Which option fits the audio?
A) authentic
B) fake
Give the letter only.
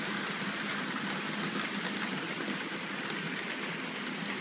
A